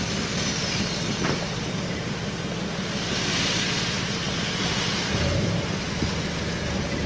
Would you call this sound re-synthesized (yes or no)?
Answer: no